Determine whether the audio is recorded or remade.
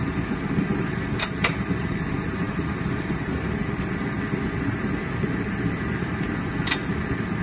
remade